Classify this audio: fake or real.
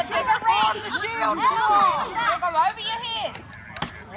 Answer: real